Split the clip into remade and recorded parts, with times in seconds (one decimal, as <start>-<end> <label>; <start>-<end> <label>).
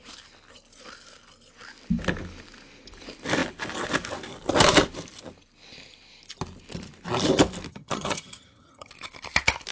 0.0-7.7 recorded; 7.7-8.9 remade; 8.9-9.7 recorded